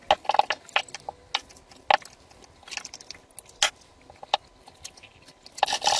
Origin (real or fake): real